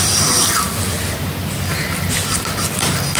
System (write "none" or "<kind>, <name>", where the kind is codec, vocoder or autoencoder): none